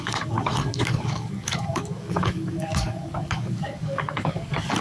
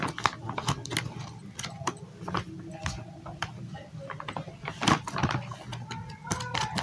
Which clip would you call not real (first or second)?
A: first